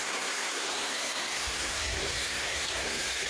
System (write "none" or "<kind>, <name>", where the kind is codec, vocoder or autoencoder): codec, SNAC